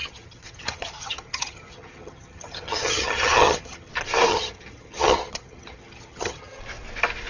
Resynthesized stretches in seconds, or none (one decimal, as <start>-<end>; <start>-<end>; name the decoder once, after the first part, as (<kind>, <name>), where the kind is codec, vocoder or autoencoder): 0.0-3.9 (vocoder, HiFi-GAN); 4.3-6.6